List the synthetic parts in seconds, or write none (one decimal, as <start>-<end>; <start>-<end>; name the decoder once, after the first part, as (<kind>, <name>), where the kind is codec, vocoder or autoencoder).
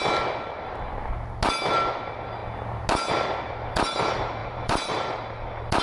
4.4-4.9 (vocoder, BigVGAN v2)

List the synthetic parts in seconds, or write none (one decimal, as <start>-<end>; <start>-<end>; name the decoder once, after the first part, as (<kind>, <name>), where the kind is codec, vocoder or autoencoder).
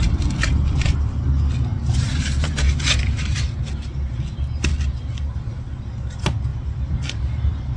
1.7-3.6 (vocoder, BigVGAN v2)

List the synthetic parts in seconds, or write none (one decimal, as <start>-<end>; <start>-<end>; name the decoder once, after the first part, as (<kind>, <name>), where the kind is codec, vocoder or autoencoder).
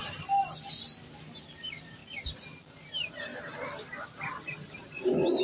1.2-2.0 (vocoder, BigVGAN v2); 2.7-3.3; 4.8-5.4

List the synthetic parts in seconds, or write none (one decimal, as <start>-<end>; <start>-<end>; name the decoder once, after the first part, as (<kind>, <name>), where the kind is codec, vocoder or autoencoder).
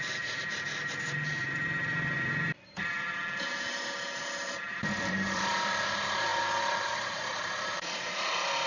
0.0-3.2 (vocoder, BigVGAN v2); 4.2-6.3; 6.9-8.7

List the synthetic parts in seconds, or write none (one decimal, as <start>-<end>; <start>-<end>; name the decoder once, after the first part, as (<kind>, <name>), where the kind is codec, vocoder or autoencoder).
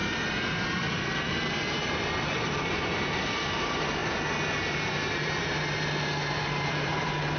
0.0-4.0 (vocoder, BigVGAN v2); 4.6-7.4